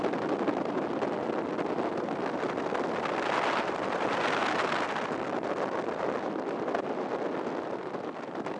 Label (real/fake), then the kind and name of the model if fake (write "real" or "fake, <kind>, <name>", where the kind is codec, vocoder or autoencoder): real